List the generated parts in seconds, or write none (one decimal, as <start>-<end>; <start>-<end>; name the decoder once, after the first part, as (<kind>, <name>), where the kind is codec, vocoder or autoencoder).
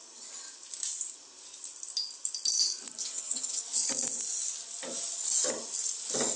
3.0-3.6 (vocoder, HiFi-GAN)